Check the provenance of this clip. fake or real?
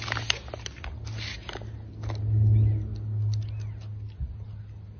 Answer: real